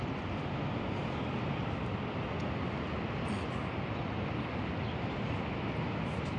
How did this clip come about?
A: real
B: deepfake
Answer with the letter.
A